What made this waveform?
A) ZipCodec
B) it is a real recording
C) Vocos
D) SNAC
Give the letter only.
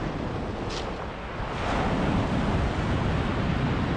B